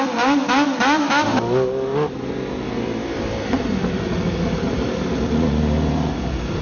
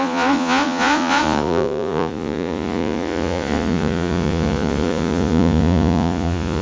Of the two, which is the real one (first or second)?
first